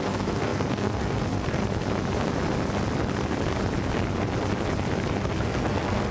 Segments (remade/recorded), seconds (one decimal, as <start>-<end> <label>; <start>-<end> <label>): 0.0-1.6 remade; 1.6-5.3 recorded; 5.3-6.1 remade